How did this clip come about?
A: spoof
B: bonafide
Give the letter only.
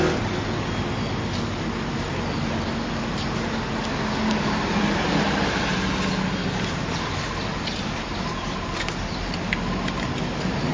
B